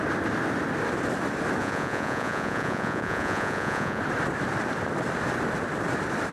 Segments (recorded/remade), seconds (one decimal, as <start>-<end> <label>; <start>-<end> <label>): 0.0-1.6 recorded; 1.6-4.0 remade; 4.0-6.3 recorded

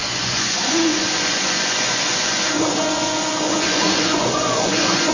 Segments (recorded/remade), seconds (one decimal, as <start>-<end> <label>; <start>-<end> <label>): 0.0-5.1 remade

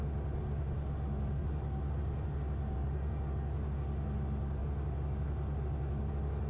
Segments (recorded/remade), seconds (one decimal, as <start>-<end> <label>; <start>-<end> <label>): 0.0-6.5 recorded

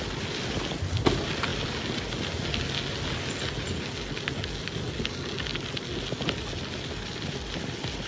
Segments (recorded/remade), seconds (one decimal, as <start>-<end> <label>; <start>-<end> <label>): 0.0-8.1 recorded

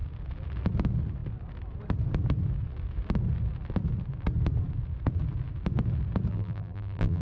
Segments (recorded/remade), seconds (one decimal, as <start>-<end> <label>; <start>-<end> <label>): 0.0-6.3 recorded; 6.3-7.2 remade

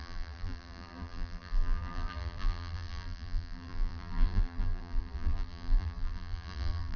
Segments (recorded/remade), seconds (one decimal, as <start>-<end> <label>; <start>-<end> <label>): 0.0-7.0 remade

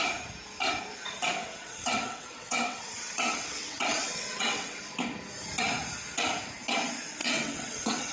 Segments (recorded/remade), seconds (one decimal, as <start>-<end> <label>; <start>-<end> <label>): 0.0-1.4 recorded; 1.4-4.8 remade; 4.8-7.2 recorded; 7.2-8.1 remade

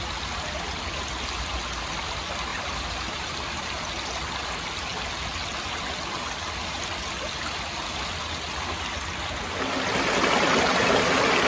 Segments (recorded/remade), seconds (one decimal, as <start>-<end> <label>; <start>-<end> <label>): 0.0-2.5 recorded; 2.5-3.9 remade; 3.9-11.5 recorded